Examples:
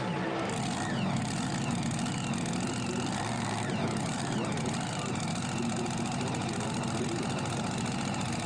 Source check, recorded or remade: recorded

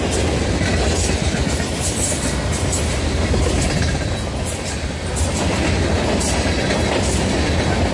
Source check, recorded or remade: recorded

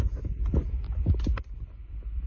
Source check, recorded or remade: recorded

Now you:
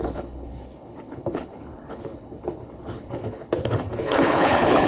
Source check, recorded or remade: remade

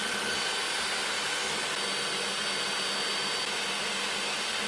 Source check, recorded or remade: recorded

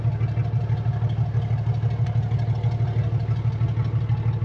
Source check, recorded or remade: recorded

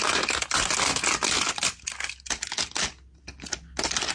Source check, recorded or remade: recorded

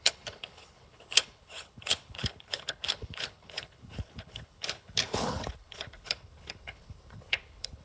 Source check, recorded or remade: remade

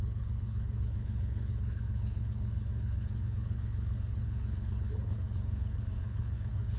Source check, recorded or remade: remade